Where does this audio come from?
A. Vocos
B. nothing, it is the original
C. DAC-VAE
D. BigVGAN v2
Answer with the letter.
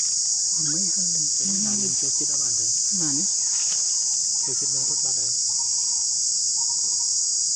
B